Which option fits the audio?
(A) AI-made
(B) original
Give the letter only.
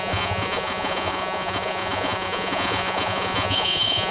A